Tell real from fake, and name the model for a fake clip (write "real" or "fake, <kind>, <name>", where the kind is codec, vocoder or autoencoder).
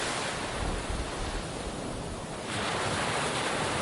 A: real